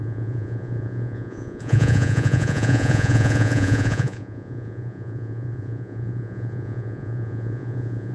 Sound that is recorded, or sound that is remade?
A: remade